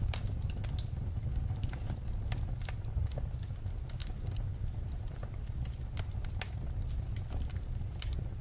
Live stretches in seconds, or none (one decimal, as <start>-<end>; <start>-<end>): 0.0-8.4